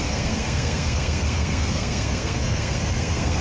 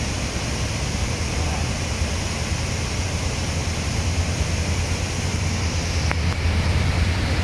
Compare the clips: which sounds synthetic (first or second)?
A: first